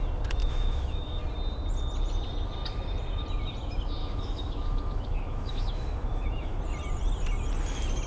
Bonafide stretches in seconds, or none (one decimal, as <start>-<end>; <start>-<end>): 0.0-0.4; 1.2-4.0; 6.6-8.1